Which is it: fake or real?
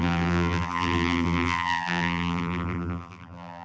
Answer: fake